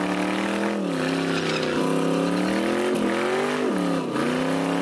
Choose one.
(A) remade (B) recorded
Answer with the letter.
B